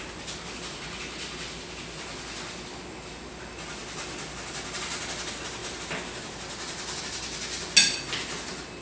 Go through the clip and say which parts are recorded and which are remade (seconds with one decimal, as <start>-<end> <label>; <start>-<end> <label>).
0.0-8.8 recorded